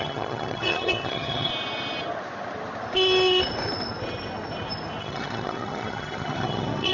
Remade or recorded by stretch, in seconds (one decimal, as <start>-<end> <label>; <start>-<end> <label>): 0.0-1.5 remade; 1.5-5.0 recorded; 5.0-6.9 remade